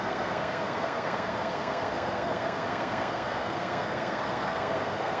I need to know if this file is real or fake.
fake